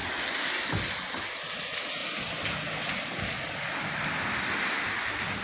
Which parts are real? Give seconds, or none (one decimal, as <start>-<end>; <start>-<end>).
0.0-5.4